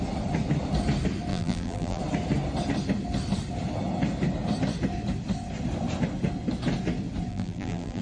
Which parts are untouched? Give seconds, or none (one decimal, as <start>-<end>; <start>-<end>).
0.0-1.3; 2.0-7.3